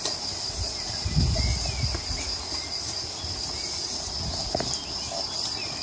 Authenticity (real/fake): real